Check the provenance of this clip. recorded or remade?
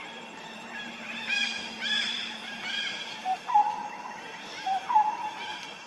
remade